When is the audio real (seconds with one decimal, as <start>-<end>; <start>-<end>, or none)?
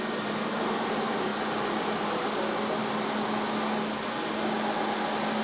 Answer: 0.0-5.4